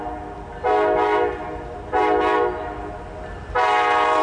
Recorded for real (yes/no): yes